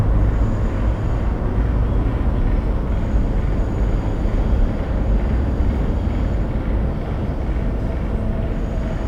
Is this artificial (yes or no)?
no